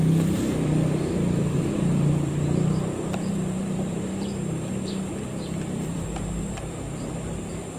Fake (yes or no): yes